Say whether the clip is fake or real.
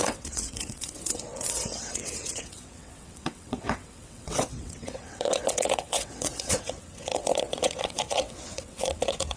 fake